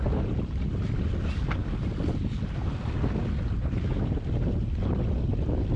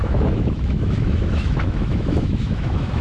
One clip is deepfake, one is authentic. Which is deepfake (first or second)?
second